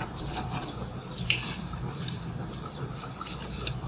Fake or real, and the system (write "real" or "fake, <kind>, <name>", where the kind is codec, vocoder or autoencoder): real